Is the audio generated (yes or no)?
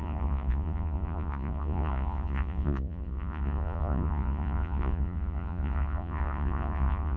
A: yes